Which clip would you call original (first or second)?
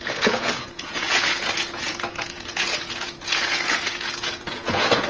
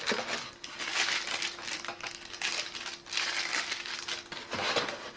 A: second